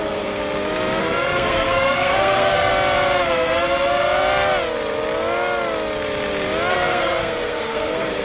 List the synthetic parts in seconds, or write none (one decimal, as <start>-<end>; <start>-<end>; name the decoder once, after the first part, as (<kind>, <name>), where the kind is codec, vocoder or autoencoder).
0.0-0.4 (codec, SNAC); 1.0-2.7; 6.7-8.2